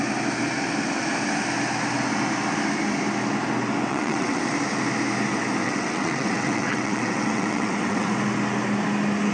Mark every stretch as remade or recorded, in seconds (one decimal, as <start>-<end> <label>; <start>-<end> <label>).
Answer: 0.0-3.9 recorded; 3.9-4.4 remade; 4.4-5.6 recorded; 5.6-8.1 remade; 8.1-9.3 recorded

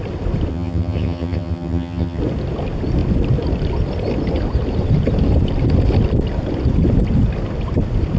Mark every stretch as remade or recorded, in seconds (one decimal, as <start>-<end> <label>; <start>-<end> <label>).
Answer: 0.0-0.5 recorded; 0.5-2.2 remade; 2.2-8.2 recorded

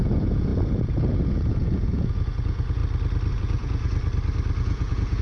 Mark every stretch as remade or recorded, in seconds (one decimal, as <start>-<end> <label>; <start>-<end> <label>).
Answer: 0.0-2.8 remade; 2.8-3.3 recorded; 3.3-3.9 remade; 3.9-4.6 recorded; 4.6-5.2 remade